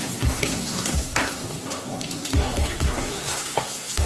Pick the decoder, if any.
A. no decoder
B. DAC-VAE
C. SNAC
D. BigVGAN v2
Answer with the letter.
C